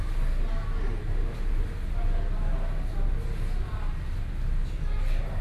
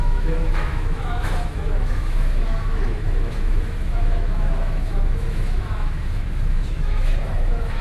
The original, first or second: first